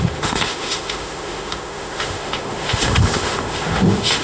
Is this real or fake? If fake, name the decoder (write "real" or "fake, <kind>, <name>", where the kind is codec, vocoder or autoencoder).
fake, autoencoder, DAC-VAE